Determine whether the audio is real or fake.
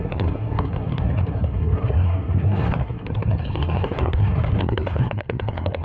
fake